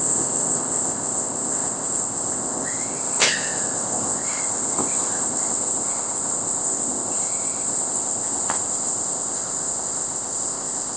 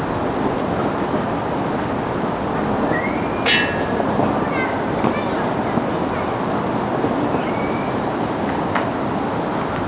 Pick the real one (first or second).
second